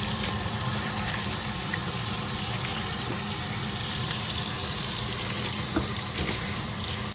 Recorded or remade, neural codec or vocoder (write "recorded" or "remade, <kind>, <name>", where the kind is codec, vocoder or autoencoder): remade, vocoder, BigVGAN v2